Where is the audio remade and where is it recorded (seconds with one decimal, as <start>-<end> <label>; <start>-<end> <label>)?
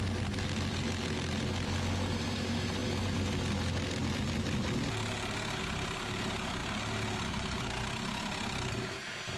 0.0-9.4 recorded